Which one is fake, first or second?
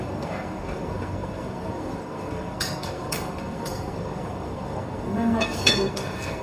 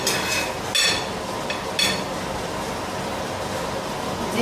first